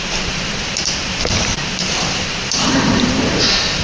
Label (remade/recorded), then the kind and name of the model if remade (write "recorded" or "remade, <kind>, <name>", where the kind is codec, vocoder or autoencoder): remade, vocoder, BigVGAN v2